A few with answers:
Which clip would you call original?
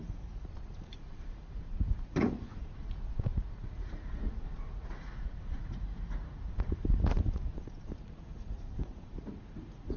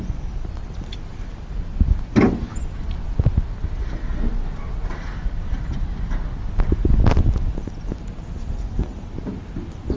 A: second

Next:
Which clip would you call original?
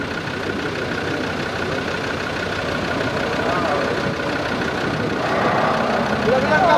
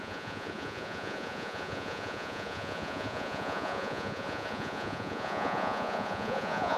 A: first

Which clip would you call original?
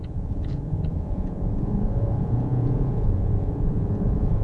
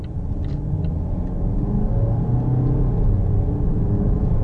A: second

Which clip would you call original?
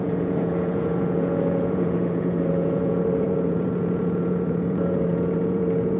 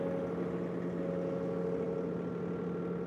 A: second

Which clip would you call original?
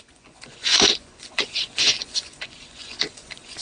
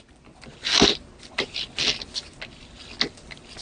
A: second